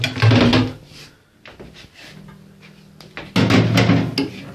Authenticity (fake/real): real